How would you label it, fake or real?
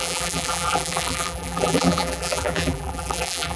fake